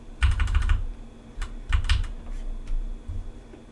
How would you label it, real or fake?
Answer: real